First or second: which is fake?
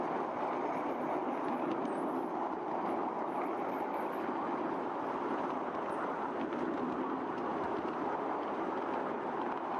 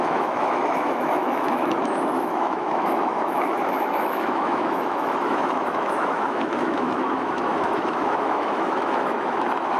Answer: second